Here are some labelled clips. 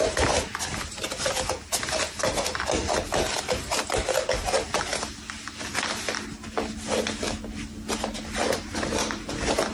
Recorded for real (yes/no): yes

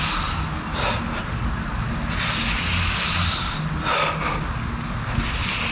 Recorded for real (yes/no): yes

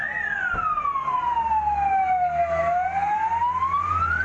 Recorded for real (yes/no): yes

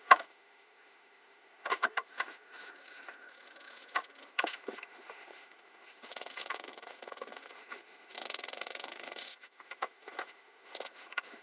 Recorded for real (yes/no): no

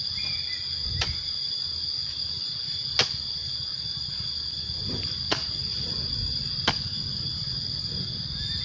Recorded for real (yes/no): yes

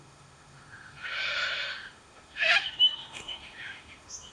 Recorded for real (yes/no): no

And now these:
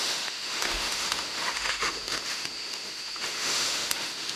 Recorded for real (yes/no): no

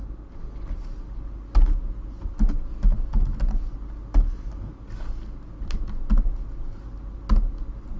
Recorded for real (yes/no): yes